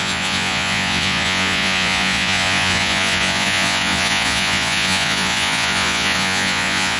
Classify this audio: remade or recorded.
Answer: remade